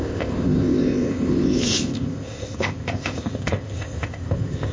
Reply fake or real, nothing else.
fake